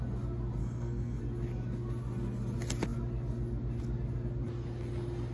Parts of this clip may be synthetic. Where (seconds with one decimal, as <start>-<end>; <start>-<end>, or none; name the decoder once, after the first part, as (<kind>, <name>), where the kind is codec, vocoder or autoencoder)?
0.6-1.2 (codec, SNAC)